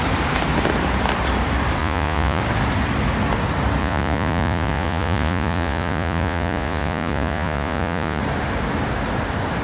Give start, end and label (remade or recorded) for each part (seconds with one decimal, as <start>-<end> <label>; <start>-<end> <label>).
0.0-1.8 recorded; 1.8-2.4 remade; 2.4-3.8 recorded; 3.8-8.2 remade; 8.2-9.6 recorded